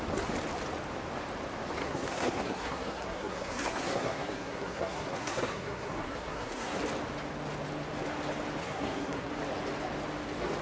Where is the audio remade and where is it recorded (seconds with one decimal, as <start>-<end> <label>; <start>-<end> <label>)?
0.0-1.8 recorded; 1.8-6.8 remade; 6.8-8.6 recorded; 8.6-9.3 remade; 9.3-10.6 recorded